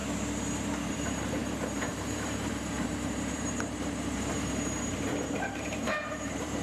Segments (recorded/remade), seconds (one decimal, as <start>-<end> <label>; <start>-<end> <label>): 0.0-0.9 recorded; 0.9-6.6 remade